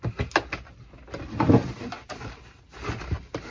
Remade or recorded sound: recorded